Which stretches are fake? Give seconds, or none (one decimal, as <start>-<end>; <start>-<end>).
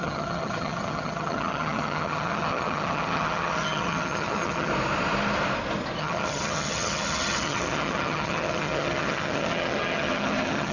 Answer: 0.0-4.7; 6.0-10.7